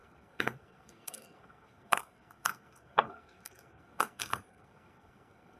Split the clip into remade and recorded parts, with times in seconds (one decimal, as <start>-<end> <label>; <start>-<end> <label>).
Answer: 0.0-5.6 remade